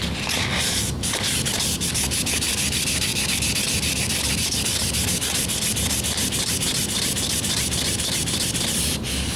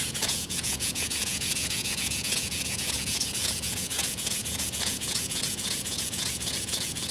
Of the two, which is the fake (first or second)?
second